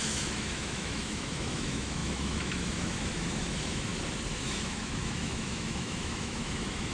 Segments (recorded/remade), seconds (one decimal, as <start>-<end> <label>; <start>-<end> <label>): 0.0-3.9 remade; 3.9-4.4 recorded; 4.4-6.9 remade